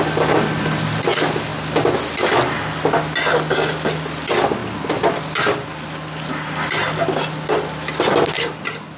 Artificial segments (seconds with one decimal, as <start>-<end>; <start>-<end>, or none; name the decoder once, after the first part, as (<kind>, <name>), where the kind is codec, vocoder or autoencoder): none